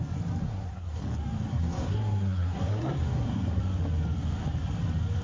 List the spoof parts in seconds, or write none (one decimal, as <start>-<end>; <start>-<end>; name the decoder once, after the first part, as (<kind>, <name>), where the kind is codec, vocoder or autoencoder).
0.4-1.0 (codec, SNAC); 1.5-3.6

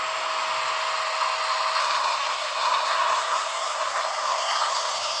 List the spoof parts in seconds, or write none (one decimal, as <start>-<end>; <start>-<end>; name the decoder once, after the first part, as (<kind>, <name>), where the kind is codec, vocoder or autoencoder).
1.8-5.2 (codec, SNAC)

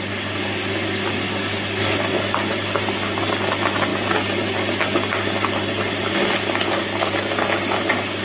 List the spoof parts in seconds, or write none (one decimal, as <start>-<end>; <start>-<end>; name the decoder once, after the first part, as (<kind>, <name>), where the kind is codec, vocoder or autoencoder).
none

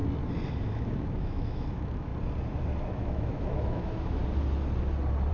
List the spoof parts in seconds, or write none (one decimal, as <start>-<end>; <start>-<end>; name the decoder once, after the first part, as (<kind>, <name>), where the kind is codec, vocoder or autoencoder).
0.6-2.1 (autoencoder, DAC-VAE); 2.8-4.2

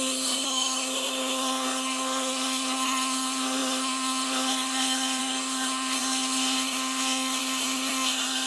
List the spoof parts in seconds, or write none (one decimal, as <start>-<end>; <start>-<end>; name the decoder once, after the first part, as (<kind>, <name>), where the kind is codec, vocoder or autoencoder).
0.0-8.5 (codec, SNAC)

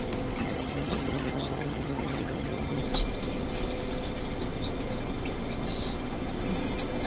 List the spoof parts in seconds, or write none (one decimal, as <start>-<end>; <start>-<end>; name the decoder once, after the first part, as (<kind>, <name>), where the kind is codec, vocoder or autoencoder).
0.4-2.8 (vocoder, HiFi-GAN)

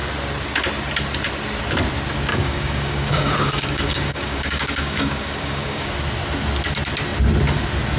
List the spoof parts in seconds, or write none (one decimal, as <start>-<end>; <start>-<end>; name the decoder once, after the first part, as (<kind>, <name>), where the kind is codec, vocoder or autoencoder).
2.3-5.9 (codec, DAC)